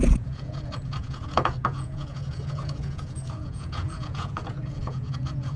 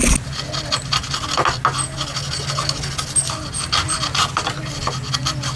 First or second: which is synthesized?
first